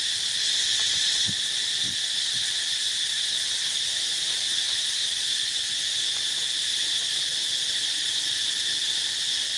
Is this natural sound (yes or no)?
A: yes